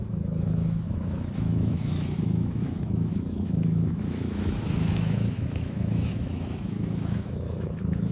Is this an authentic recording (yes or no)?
no